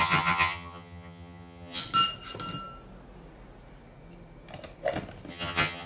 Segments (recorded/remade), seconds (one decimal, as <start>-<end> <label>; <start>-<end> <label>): 0.0-1.8 remade; 1.8-5.3 recorded; 5.3-5.9 remade